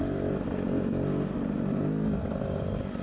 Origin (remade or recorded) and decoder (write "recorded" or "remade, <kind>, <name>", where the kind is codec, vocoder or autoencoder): recorded